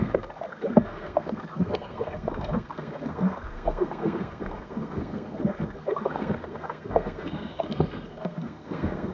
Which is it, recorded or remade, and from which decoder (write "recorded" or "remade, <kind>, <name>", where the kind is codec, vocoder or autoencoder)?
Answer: remade, codec, SNAC